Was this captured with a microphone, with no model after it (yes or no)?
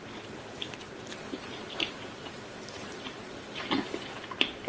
no